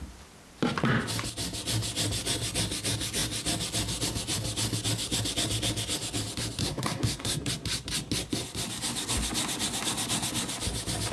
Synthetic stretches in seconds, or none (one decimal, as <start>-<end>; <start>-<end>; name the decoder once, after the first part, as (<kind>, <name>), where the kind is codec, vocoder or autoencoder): 6.6-7.5 (codec, SNAC)